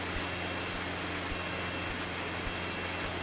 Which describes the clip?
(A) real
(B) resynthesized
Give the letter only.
A